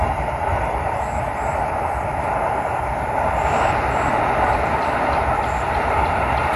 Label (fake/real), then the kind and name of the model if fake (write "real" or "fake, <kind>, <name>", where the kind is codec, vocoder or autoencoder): fake, vocoder, BigVGAN v2